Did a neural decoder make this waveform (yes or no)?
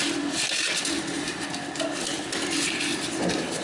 no